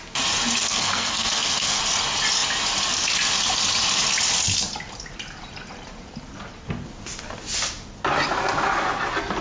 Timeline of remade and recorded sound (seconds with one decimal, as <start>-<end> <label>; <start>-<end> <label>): 0.0-0.6 recorded; 0.6-1.8 remade; 1.8-9.4 recorded